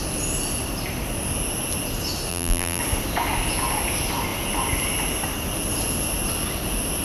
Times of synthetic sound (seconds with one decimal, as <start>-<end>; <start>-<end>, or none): 2.3-2.8